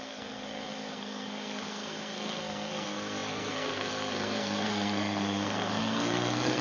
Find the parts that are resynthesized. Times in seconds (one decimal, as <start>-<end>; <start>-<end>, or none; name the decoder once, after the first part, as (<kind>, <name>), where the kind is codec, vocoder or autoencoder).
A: 0.0-6.6 (codec, SNAC)